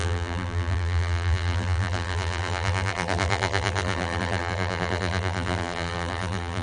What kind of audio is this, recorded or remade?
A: remade